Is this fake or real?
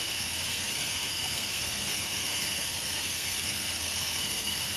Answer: fake